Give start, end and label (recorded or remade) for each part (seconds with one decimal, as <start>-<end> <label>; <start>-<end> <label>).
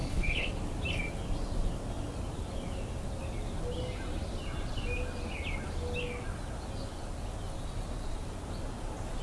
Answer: 0.0-0.5 remade; 0.5-9.2 recorded